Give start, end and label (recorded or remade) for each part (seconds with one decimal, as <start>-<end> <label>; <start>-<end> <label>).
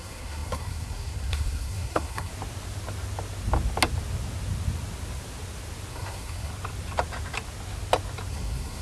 0.0-2.3 remade; 2.3-5.9 recorded; 5.9-6.5 remade; 6.5-8.3 recorded; 8.3-8.8 remade